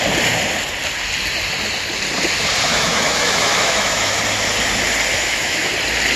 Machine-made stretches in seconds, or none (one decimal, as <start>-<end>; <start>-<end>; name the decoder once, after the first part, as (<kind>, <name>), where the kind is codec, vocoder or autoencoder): 2.7-4.2 (autoencoder, DAC-VAE); 5.1-5.7